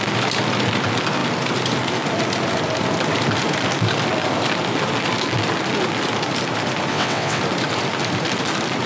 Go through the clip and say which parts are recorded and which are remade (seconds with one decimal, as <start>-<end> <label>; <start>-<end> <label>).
0.0-6.9 recorded; 6.9-7.4 remade; 7.4-8.9 recorded